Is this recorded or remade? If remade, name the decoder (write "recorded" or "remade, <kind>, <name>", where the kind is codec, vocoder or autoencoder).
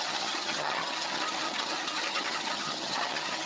remade, vocoder, HiFi-GAN